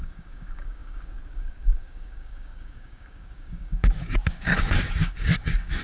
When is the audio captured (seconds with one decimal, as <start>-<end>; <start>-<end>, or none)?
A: none